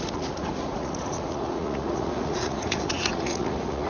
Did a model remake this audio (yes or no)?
yes